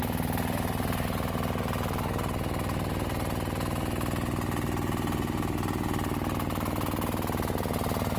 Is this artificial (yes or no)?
no